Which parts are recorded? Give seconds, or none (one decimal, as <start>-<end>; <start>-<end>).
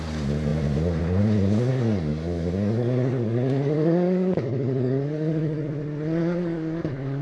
0.0-1.7; 5.7-6.2